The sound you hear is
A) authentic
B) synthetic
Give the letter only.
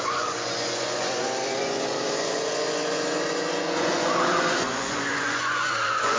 B